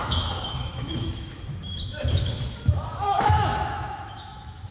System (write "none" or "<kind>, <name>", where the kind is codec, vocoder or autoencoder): autoencoder, DAC-VAE